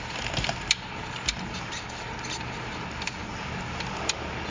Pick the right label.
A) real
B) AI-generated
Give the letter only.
A